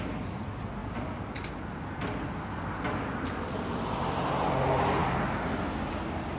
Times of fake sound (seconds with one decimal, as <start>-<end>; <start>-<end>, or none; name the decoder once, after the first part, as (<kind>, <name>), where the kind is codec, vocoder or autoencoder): none